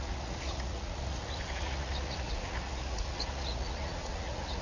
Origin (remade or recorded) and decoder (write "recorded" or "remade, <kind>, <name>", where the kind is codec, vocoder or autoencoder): remade, vocoder, Vocos